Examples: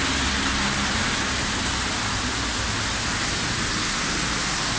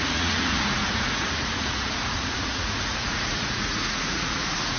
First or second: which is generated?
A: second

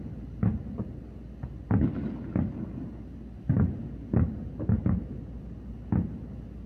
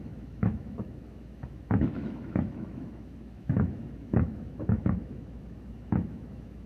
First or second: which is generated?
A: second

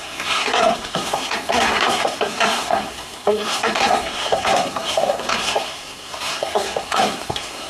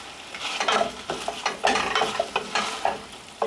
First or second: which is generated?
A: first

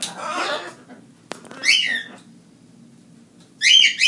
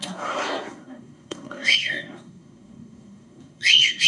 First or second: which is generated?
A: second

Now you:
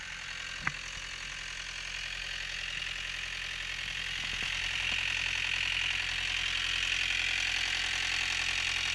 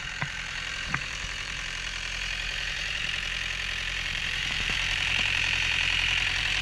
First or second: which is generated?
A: second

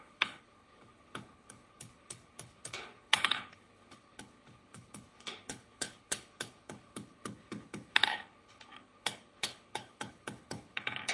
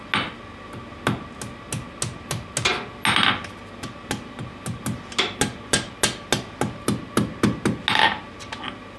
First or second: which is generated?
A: first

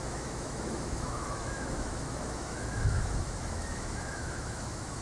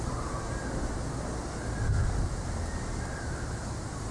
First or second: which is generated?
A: first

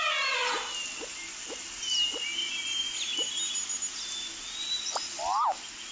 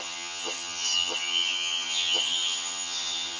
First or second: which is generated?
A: second